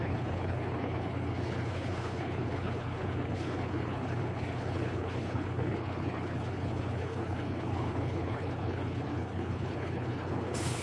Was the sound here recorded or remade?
remade